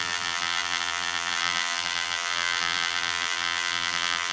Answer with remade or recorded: remade